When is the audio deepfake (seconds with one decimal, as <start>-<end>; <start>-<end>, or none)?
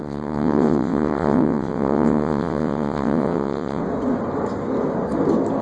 0.0-3.8